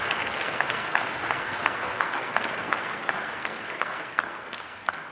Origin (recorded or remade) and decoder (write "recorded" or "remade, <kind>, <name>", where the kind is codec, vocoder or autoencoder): remade, codec, SNAC